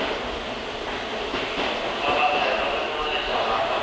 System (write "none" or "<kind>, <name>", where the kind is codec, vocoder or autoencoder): none